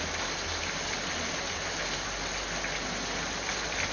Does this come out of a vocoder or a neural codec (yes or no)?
no